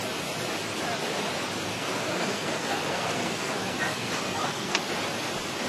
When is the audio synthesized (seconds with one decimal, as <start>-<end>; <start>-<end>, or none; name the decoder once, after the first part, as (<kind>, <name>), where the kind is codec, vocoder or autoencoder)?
1.7-4.9 (codec, SNAC)